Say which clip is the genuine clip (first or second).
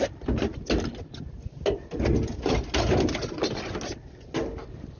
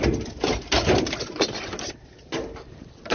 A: first